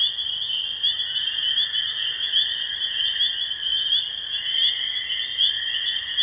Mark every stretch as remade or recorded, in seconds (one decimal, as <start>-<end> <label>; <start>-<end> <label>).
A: 0.0-6.2 recorded